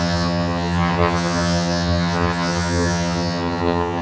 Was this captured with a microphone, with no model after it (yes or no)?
no